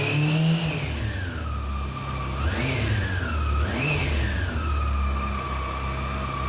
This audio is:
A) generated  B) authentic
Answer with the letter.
B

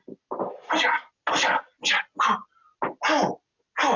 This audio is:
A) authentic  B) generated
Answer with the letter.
A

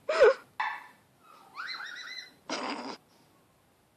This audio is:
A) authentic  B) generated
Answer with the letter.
A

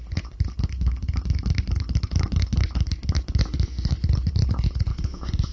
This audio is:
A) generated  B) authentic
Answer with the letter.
B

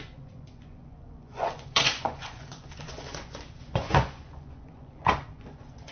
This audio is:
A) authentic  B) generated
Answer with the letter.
B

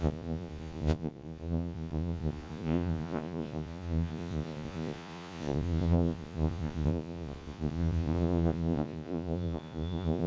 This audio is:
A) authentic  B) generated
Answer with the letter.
B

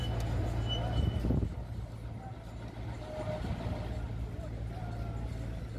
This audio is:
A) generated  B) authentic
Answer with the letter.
B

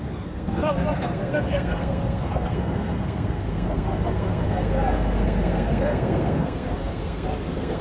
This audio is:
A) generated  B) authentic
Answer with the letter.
A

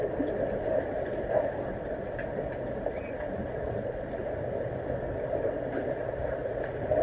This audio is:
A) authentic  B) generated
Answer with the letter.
A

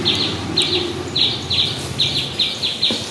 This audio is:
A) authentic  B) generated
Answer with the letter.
A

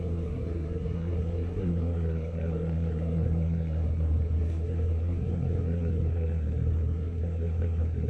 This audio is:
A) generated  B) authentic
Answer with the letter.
A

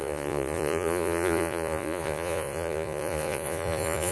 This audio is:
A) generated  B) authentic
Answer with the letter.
A